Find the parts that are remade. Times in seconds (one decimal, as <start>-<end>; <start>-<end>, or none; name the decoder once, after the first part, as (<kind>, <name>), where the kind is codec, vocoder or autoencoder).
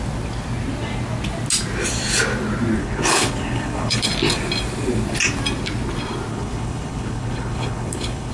2.8-4.1 (codec, HILCodec); 6.3-8.3